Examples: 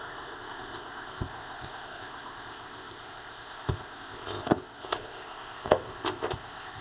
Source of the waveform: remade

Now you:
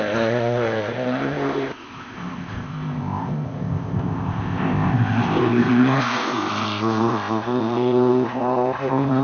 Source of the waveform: remade